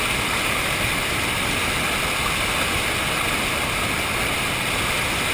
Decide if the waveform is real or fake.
real